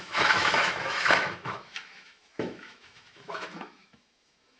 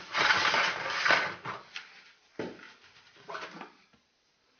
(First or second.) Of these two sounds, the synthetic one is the first